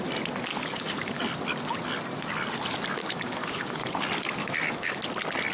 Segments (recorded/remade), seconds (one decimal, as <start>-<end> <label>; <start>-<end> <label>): 0.0-0.5 recorded; 0.5-1.2 remade; 1.2-3.0 recorded; 3.0-3.9 remade; 3.9-4.4 recorded; 4.4-5.0 remade; 5.0-5.5 recorded